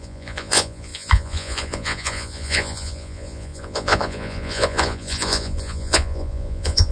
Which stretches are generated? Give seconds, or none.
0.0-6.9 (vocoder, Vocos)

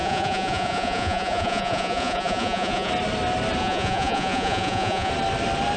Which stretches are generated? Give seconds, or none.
0.0-2.9 (vocoder, Vocos); 3.6-5.1